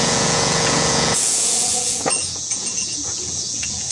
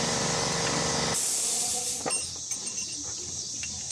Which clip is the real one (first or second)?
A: second